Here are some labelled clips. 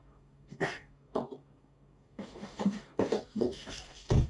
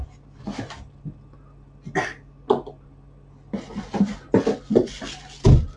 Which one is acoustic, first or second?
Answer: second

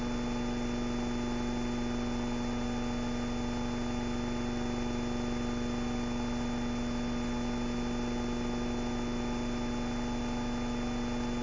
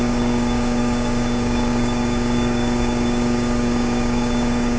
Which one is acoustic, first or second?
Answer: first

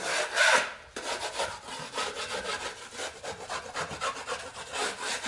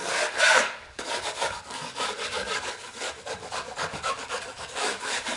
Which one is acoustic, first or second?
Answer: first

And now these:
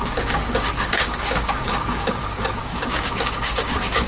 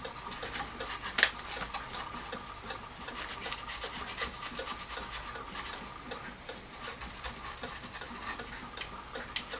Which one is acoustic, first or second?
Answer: second